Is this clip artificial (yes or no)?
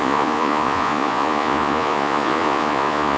yes